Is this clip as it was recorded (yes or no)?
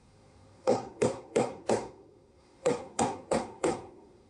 no